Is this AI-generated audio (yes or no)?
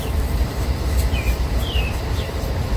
yes